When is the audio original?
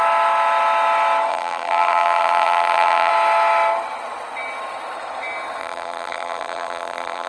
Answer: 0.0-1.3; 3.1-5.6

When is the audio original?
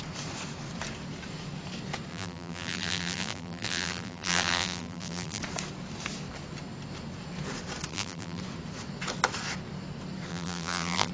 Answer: 0.0-2.1; 5.4-7.9; 8.4-10.3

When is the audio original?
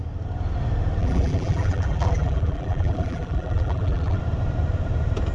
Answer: 0.0-1.0; 4.2-5.3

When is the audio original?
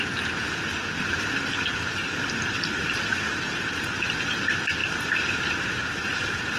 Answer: 0.0-2.0; 4.0-4.8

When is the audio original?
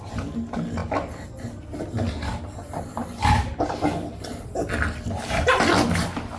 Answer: 0.0-6.4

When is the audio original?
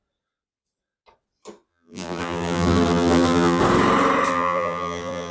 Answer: 0.0-1.7; 3.6-4.3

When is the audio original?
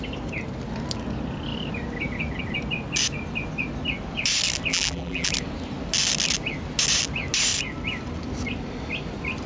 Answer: 0.0-4.7; 5.3-9.5